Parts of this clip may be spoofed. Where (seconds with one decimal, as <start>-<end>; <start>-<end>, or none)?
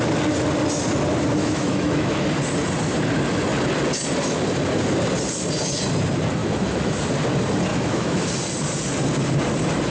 1.4-2.2; 6.4-7.0; 7.7-8.3